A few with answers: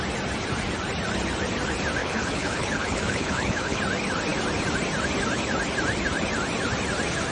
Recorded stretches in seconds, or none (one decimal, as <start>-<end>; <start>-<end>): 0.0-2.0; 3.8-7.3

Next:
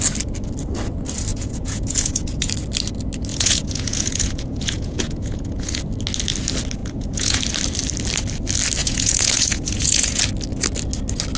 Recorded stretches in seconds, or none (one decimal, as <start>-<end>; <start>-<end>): 0.0-1.3; 2.5-3.3; 5.8-6.8; 7.4-8.8; 10.2-11.4

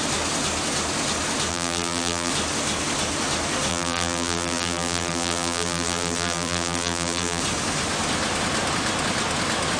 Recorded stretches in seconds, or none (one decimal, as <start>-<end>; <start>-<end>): 0.0-1.5; 2.3-3.7; 7.4-9.8